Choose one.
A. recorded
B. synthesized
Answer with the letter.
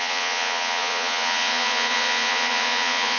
B